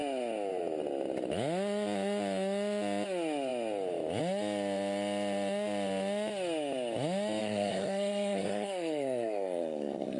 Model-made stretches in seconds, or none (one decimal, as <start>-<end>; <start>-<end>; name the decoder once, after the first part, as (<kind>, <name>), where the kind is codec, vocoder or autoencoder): 7.4-10.2 (codec, SNAC)